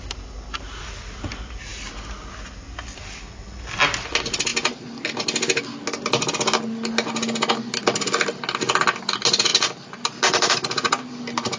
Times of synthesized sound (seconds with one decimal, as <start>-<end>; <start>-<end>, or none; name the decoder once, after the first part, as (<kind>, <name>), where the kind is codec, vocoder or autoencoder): none